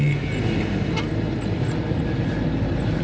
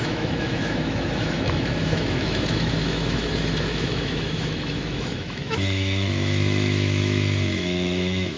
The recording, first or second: first